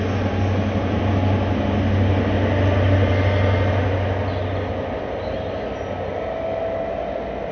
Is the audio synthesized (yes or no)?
no